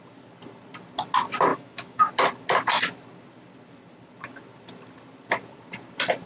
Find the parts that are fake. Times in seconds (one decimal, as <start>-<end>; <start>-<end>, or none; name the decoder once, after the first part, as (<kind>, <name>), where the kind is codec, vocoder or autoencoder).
1.5-2.1 (autoencoder, DAC-VAE)